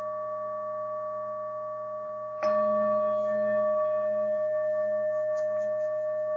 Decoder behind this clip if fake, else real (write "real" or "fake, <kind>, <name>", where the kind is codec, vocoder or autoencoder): real